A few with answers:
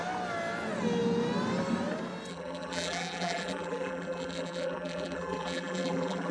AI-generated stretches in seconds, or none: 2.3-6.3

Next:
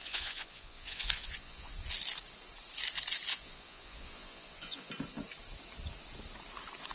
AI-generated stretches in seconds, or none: 0.0-1.7; 3.3-4.9

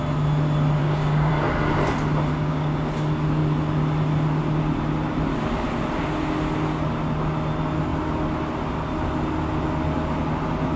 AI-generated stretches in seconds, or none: 0.8-1.3; 2.3-2.9